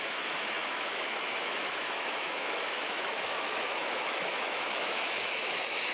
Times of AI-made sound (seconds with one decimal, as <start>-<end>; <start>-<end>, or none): 0.0-5.9